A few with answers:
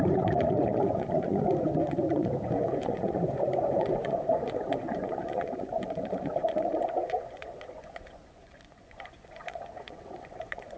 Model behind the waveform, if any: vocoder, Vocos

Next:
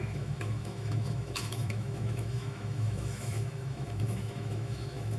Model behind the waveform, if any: autoencoder, DAC-VAE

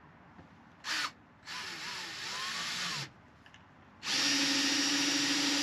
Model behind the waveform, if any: none